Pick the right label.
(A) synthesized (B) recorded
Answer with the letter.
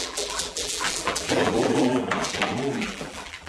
A